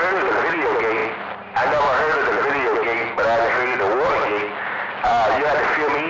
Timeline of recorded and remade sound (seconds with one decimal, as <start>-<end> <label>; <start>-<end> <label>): 0.0-6.1 recorded